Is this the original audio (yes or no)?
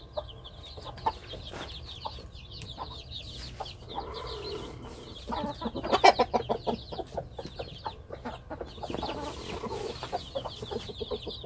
yes